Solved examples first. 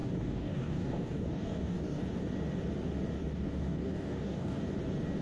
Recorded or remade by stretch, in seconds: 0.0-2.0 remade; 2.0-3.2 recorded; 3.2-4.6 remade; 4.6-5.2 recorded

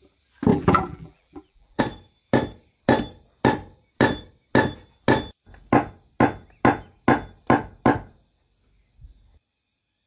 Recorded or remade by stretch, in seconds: 0.0-0.5 recorded; 0.5-1.8 remade; 1.8-10.1 recorded

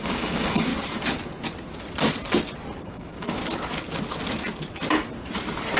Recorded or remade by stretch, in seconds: 0.0-0.7 remade; 0.7-2.8 recorded; 2.8-3.4 remade; 3.4-5.8 recorded

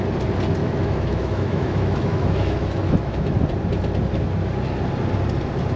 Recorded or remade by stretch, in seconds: 0.0-0.6 recorded; 0.6-3.4 remade; 3.4-5.8 recorded

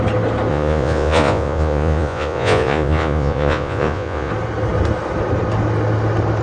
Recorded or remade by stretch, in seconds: 0.0-0.5 recorded; 0.5-4.3 remade; 4.3-6.4 recorded